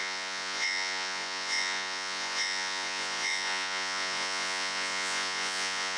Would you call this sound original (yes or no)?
no